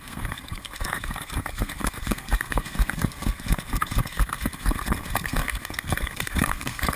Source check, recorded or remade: remade